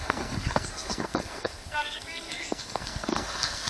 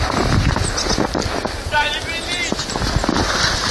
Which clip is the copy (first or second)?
first